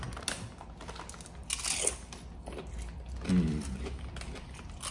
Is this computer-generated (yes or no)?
no